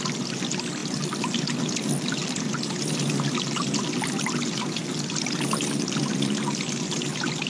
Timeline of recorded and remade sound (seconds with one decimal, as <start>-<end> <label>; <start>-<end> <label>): 0.0-7.5 recorded